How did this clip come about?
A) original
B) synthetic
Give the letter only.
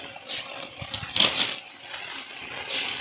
A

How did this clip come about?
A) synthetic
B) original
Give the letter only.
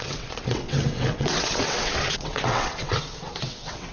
A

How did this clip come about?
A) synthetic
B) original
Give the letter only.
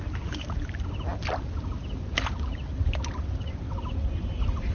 B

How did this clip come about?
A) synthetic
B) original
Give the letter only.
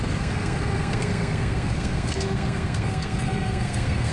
A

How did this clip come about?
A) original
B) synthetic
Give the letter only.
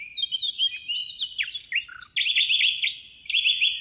A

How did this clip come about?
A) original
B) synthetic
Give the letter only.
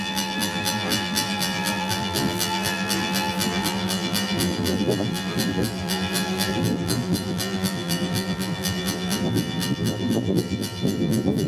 B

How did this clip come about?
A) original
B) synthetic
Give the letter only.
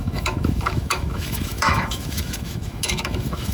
B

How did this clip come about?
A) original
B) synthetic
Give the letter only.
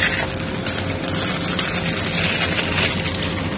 A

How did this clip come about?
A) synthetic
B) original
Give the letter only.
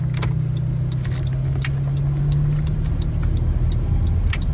B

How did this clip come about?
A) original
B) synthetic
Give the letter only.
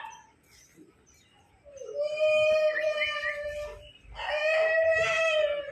A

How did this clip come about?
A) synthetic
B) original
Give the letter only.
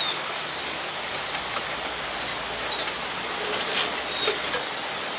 B